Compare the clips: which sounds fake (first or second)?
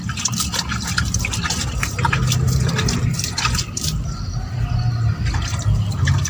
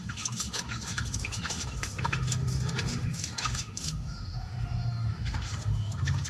second